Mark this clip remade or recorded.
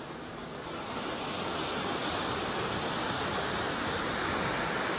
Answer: recorded